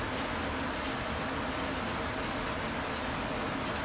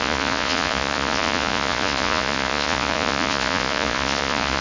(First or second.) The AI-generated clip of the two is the second